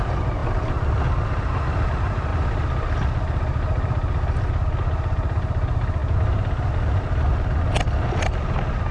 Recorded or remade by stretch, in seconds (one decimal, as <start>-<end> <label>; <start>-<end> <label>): 0.0-8.9 recorded

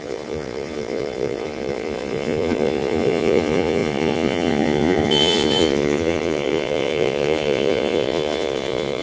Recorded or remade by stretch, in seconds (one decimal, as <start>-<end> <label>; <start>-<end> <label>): 0.0-9.0 remade